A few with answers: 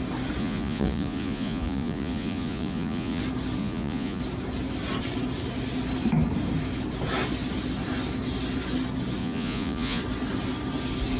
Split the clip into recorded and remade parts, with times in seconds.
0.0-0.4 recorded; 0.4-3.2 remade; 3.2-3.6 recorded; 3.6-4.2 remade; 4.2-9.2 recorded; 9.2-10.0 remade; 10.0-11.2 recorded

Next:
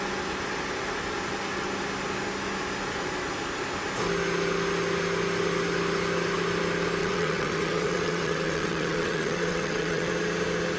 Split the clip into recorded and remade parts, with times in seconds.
0.0-7.0 recorded; 7.0-10.1 remade; 10.1-10.8 recorded

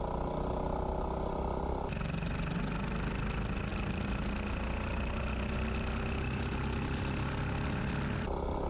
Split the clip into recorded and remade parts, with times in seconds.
0.0-8.7 recorded

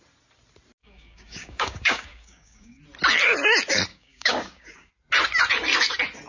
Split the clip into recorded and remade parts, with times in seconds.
0.0-0.8 recorded; 0.8-2.8 remade; 2.8-3.9 recorded; 3.9-4.9 remade; 4.9-6.3 recorded